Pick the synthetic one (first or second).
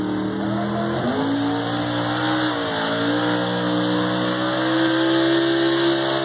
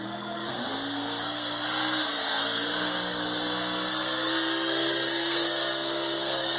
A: second